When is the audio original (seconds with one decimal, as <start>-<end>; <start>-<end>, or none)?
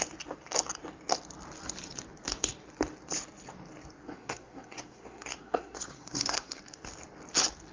0.0-4.0; 6.6-7.7